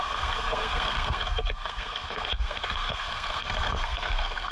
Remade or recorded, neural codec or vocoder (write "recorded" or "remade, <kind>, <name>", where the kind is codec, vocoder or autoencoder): remade, codec, SNAC